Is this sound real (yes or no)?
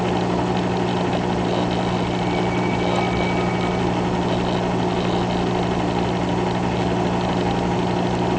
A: yes